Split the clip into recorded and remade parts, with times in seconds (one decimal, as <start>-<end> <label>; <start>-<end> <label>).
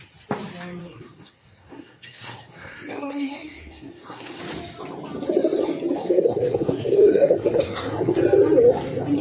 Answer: 0.0-0.8 recorded; 0.8-4.4 remade; 4.4-6.0 recorded; 6.0-8.2 remade; 8.2-9.2 recorded